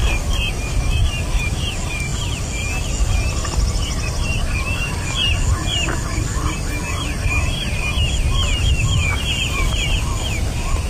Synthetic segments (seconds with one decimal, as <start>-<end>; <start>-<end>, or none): none